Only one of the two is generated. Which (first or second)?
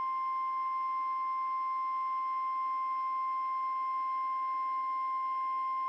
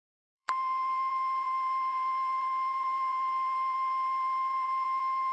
second